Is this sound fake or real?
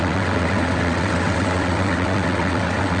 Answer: fake